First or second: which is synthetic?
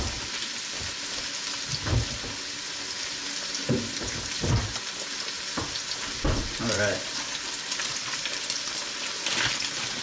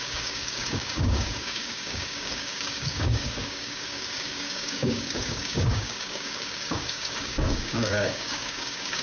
second